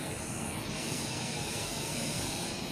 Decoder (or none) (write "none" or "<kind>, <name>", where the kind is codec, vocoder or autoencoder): codec, SNAC